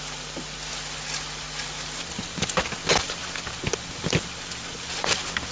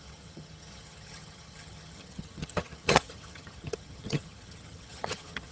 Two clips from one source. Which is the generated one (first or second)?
second